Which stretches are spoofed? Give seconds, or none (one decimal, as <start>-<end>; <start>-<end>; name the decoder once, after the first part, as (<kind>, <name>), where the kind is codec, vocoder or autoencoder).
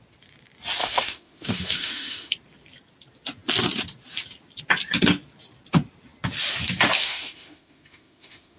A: 0.8-2.3 (autoencoder, DAC-VAE); 7.0-8.6